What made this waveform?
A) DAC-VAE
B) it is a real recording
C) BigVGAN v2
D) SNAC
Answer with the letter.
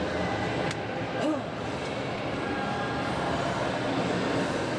B